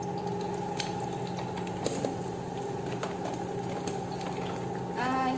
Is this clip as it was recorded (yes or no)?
yes